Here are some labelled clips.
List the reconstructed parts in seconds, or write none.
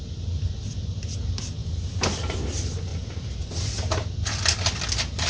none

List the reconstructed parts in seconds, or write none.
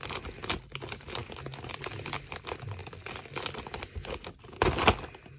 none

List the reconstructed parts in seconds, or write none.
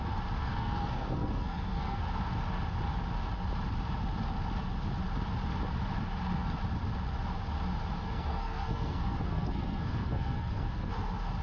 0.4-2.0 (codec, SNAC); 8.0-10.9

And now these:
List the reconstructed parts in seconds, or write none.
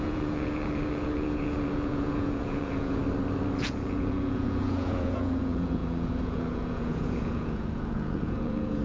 0.0-3.0 (vocoder, Vocos); 3.6-8.8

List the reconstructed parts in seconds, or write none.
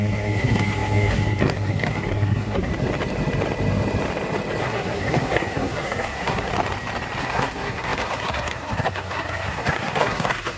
0.0-2.7 (codec, SNAC); 4.6-6.5; 7.2-10.6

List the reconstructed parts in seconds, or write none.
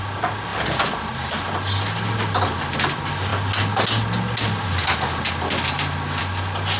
none